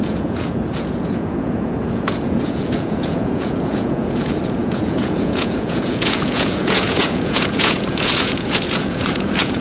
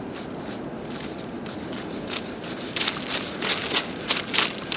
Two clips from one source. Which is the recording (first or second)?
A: second